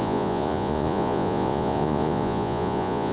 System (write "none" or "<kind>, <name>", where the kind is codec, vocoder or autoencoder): vocoder, Vocos